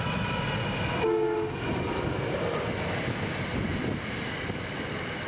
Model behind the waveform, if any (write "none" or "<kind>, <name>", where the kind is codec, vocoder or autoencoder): none